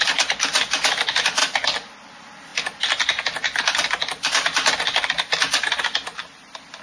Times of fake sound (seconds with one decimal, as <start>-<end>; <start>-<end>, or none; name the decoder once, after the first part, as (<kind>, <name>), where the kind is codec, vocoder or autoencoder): 1.4-2.1 (vocoder, BigVGAN v2)